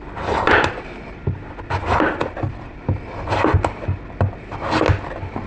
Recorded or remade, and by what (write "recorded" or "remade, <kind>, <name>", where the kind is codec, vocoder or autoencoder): recorded